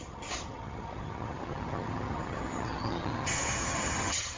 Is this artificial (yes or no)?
yes